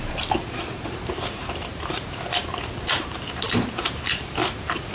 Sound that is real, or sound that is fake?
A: fake